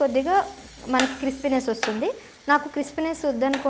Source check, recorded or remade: recorded